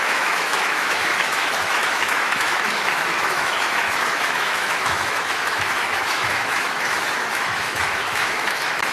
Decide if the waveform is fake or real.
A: fake